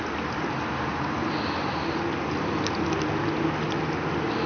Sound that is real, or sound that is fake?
real